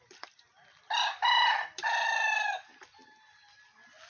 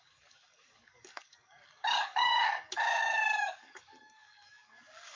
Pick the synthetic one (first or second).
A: second